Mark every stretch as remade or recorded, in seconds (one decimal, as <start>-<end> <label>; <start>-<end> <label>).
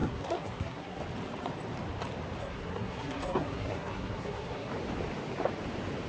0.0-1.0 remade; 1.0-2.4 recorded; 2.4-4.7 remade; 4.7-6.1 recorded